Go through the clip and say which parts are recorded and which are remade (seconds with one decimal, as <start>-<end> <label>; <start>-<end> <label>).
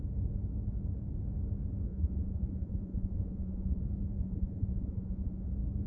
0.0-1.9 recorded; 1.9-3.8 remade; 3.8-4.2 recorded; 4.2-5.5 remade; 5.5-5.9 recorded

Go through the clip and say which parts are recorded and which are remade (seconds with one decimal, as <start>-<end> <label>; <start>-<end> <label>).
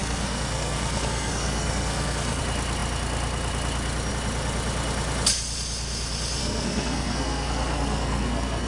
0.0-2.4 remade; 2.4-6.4 recorded; 6.4-8.7 remade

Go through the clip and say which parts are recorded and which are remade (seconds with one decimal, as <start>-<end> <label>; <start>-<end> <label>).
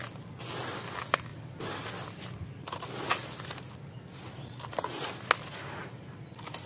0.0-6.7 recorded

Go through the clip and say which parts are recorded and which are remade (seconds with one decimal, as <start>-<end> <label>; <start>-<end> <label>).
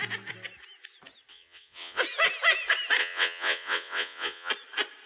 0.0-1.3 recorded; 1.3-2.0 remade; 2.0-3.0 recorded; 3.0-4.5 remade; 4.5-5.1 recorded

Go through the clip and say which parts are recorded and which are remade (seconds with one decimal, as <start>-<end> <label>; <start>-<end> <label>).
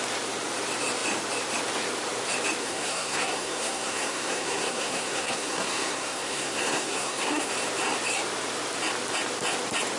0.0-2.6 recorded; 2.6-7.5 remade; 7.5-10.0 recorded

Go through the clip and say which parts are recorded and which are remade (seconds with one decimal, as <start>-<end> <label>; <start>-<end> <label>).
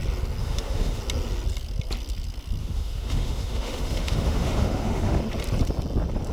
0.0-0.4 recorded; 0.4-1.0 remade; 1.0-2.6 recorded; 2.6-5.2 remade; 5.2-6.3 recorded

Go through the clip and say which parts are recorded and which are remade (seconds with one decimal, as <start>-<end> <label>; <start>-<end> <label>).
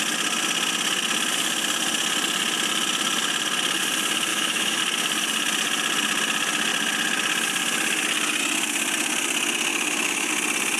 0.0-4.3 recorded; 4.3-4.8 remade; 4.8-9.7 recorded; 9.7-10.3 remade; 10.3-10.8 recorded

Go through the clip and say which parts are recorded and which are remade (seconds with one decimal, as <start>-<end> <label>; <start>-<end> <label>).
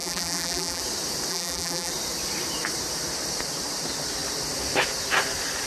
0.0-0.8 remade; 0.8-1.3 recorded; 1.3-1.9 remade; 1.9-5.7 recorded